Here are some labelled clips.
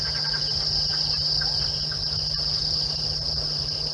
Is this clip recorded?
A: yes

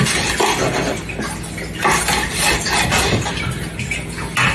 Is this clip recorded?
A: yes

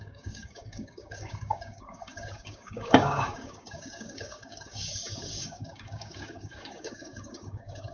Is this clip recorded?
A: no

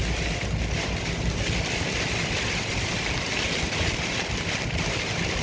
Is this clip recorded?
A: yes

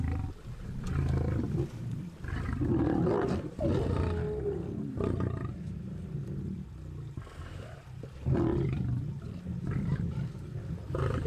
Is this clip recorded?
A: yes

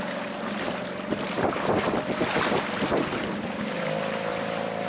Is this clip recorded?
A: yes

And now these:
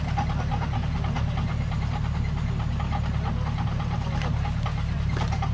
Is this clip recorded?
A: yes